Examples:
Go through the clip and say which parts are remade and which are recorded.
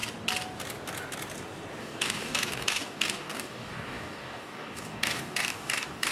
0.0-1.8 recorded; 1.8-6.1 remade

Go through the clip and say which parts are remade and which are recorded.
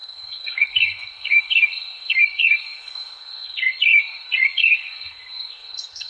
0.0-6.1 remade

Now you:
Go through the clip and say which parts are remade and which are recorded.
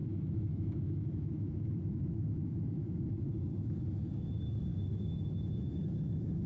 0.0-3.0 remade; 3.0-4.7 recorded; 4.7-6.5 remade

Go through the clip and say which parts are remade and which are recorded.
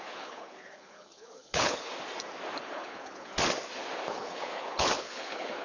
0.0-1.9 remade; 1.9-2.6 recorded; 2.6-3.3 remade; 3.3-4.1 recorded; 4.1-5.6 remade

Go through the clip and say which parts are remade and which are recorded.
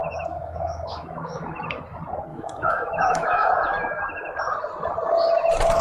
0.0-1.4 remade; 1.4-2.3 recorded; 2.3-3.5 remade; 3.5-5.8 recorded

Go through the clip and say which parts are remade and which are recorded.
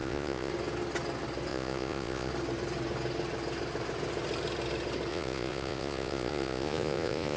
0.0-0.5 remade; 0.5-1.5 recorded; 1.5-2.3 remade; 2.3-5.1 recorded; 5.1-7.4 remade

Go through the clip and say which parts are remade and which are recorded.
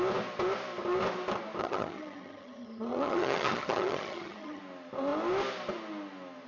0.0-1.6 recorded; 1.6-4.6 remade; 4.6-6.5 recorded